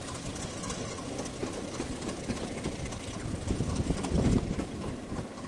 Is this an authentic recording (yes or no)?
yes